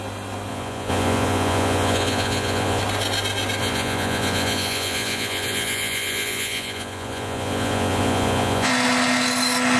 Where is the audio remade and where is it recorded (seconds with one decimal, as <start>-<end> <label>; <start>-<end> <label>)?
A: 0.0-0.5 recorded; 0.5-2.8 remade; 2.8-3.6 recorded; 3.6-8.7 remade; 8.7-9.8 recorded